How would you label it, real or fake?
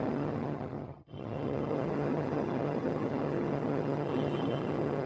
fake